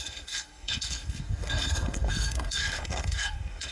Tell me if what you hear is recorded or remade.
remade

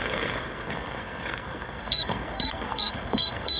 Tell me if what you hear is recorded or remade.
remade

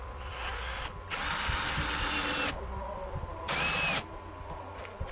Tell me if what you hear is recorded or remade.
recorded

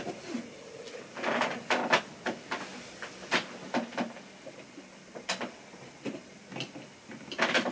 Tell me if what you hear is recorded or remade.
recorded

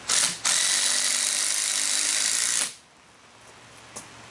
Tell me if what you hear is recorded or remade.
recorded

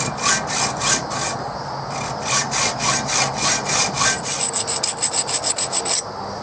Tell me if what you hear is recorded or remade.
recorded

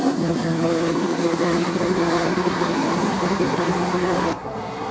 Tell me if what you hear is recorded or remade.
remade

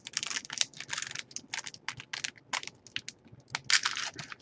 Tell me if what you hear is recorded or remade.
recorded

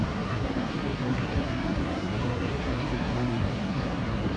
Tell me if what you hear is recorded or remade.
remade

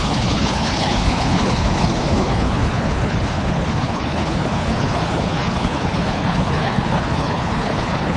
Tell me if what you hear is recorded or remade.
remade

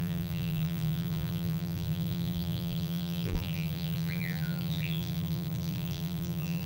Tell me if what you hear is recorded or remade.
remade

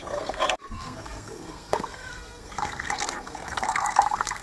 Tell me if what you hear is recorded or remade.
remade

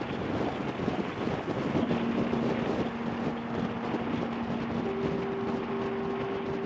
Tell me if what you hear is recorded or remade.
recorded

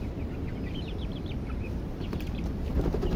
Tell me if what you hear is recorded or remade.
remade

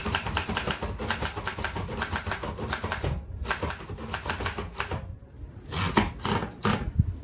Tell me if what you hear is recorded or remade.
recorded